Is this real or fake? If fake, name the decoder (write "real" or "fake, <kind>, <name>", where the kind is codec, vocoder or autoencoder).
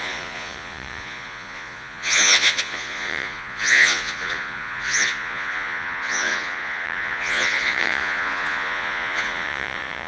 fake, vocoder, Vocos